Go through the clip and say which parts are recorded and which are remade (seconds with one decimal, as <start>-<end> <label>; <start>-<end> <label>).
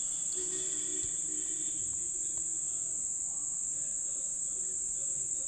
0.0-0.9 remade; 0.9-4.2 recorded; 4.2-5.5 remade